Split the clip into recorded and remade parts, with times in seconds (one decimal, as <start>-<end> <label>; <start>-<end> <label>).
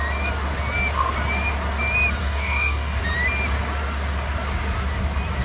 0.0-2.2 recorded; 2.2-3.0 remade; 3.0-5.4 recorded